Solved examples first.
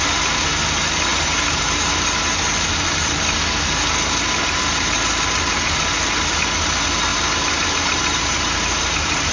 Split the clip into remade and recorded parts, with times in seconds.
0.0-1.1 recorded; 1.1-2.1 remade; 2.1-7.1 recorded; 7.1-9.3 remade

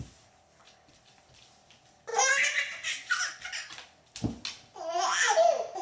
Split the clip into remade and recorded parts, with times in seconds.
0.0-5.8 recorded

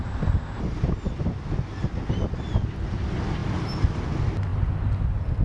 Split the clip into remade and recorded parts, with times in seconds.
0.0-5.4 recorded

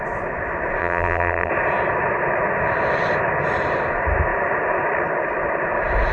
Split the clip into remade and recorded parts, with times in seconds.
0.0-0.8 recorded; 0.8-1.5 remade; 1.5-6.1 recorded

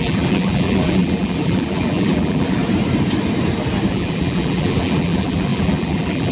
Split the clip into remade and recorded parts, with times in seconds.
0.0-2.6 remade; 2.6-3.9 recorded; 3.9-6.3 remade